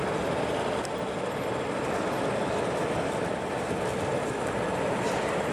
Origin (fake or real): real